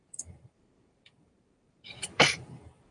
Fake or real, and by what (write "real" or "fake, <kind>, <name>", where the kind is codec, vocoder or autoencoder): fake, vocoder, BigVGAN v2